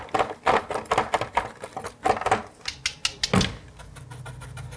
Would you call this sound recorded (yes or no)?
yes